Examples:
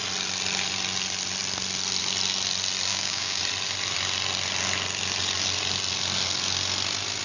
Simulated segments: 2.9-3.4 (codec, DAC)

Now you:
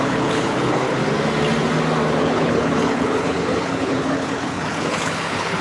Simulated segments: 0.0-1.0 (codec, HILCodec); 2.2-5.6

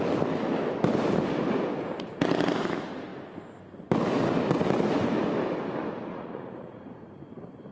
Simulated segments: 6.1-7.2 (vocoder, Vocos)

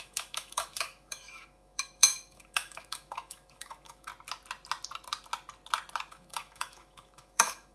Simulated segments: 0.0-4.1 (autoencoder, DAC-VAE); 6.1-7.7

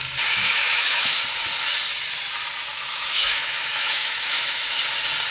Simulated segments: 0.4-1.2 (autoencoder, DAC-VAE); 2.7-4.8

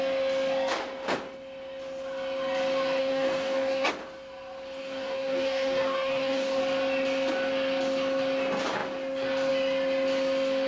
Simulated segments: 3.0-3.9 (codec, DAC); 4.8-6.6

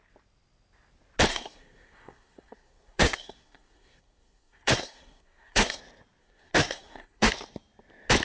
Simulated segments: 1.3-5.8 (codec, SNAC); 6.2-7.3

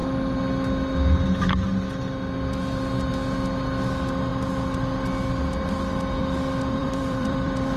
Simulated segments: 6.8-7.8 (vocoder, BigVGAN v2)